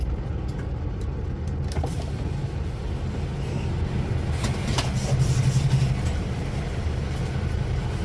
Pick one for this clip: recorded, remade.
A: recorded